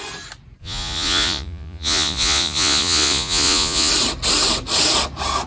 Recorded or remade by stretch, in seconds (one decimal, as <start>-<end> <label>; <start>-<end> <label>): 0.0-0.6 recorded; 0.6-3.9 remade; 3.9-5.5 recorded